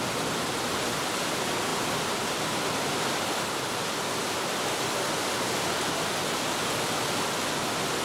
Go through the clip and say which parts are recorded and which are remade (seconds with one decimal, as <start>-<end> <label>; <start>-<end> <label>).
0.0-8.0 recorded